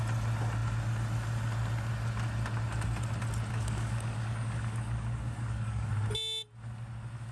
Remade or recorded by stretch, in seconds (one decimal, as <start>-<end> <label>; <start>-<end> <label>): 0.0-3.5 recorded; 3.5-5.9 remade; 5.9-7.3 recorded